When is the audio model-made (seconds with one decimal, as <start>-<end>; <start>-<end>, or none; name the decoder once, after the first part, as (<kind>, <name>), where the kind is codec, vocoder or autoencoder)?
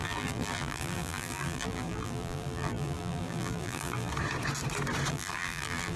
0.0-4.1 (vocoder, BigVGAN v2); 5.1-6.0